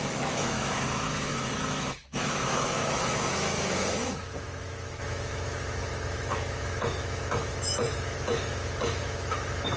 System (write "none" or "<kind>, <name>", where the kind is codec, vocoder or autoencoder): autoencoder, DAC-VAE